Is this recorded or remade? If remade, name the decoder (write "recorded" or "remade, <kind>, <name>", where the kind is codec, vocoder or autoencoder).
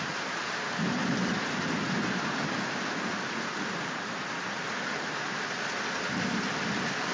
recorded